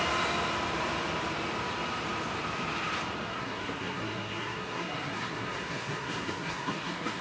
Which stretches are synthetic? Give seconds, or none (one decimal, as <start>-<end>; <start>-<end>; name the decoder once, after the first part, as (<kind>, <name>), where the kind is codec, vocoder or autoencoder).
3.3-7.2 (codec, SNAC)